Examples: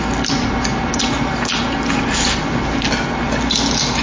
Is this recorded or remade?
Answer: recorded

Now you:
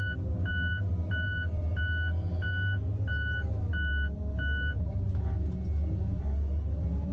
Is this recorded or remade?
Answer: recorded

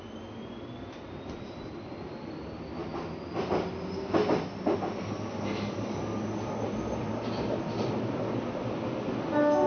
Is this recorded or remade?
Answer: recorded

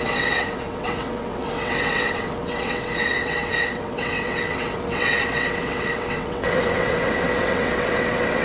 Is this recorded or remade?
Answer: remade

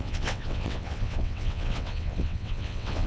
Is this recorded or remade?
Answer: remade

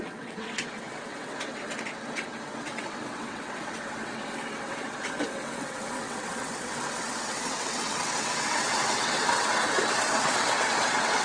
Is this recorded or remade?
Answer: remade